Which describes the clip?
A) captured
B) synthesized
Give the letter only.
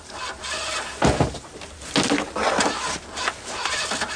A